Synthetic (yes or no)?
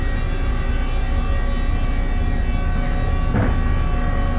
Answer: no